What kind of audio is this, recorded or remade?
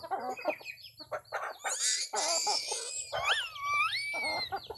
recorded